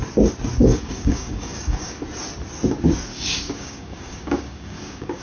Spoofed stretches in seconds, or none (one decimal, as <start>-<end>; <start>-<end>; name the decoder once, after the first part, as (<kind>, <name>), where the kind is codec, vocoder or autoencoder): 0.6-2.0 (codec, DAC); 3.1-5.2